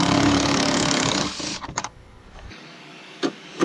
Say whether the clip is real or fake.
fake